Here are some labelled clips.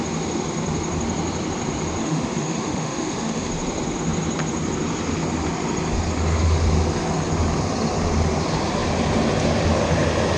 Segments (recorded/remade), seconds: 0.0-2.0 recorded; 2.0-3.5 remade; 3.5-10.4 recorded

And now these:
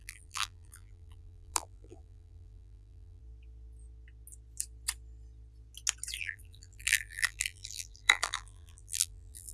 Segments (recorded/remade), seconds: 0.0-3.2 remade; 3.2-6.2 recorded; 6.2-9.5 remade

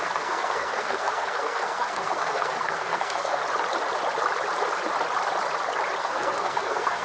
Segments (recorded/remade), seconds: 0.0-3.4 remade; 3.4-6.0 recorded; 6.0-7.0 remade

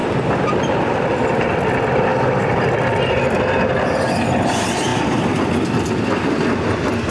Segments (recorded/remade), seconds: 0.0-7.1 recorded

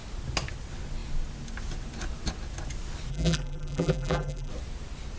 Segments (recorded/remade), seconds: 0.0-3.1 recorded; 3.1-4.5 remade; 4.5-5.2 recorded